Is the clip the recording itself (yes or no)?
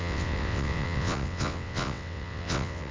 no